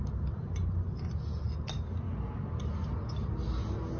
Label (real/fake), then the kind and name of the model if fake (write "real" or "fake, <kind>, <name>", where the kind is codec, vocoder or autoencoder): real